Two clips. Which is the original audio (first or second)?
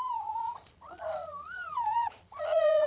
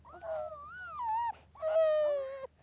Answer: second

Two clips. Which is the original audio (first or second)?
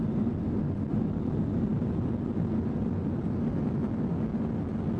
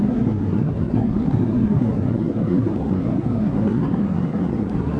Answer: first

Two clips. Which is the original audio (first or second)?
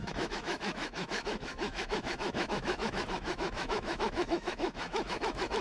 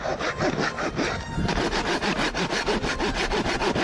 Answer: second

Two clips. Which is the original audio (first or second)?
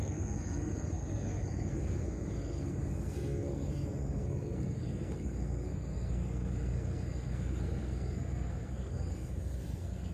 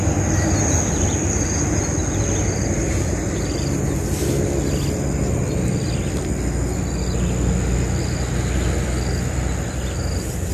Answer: second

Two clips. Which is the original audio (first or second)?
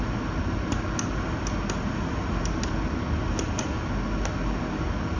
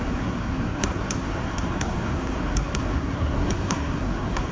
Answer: first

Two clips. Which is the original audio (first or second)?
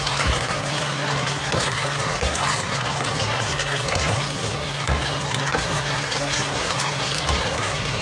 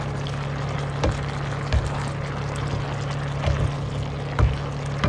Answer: second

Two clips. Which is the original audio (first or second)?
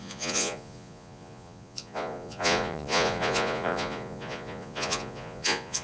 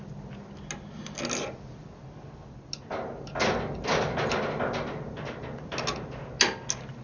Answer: second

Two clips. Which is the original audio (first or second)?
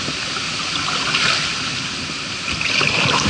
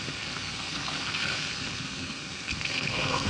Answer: first